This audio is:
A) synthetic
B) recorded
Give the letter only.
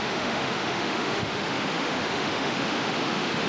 A